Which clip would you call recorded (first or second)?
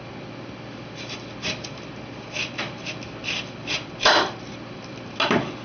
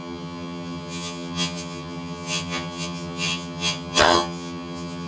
first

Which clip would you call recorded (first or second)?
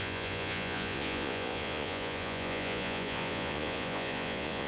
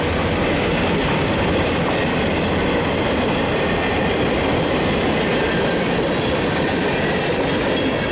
second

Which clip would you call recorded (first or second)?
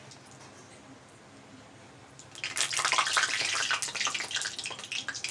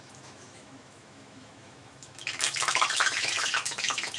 first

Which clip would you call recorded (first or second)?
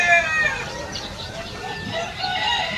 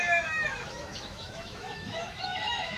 first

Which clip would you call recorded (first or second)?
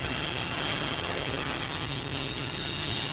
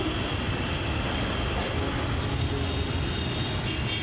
second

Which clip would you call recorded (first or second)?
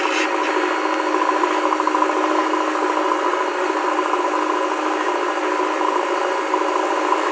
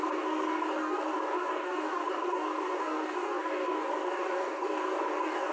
first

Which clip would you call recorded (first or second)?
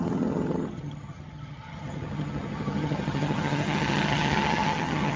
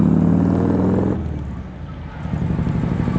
second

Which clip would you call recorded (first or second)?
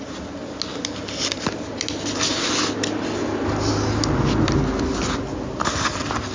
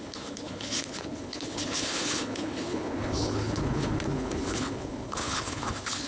first